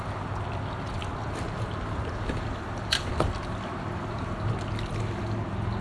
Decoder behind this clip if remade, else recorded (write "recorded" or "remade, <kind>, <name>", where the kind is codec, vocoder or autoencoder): recorded